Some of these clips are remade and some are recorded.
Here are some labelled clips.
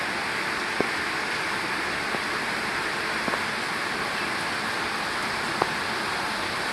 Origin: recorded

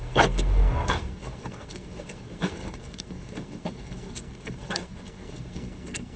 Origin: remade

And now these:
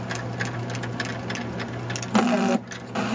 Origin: recorded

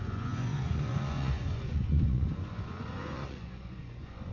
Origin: remade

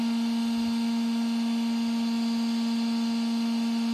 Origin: recorded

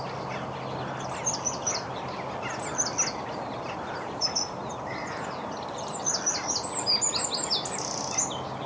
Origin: recorded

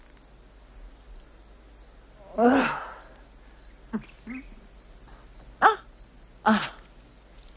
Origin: recorded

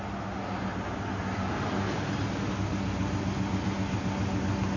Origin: recorded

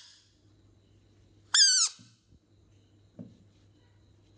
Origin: recorded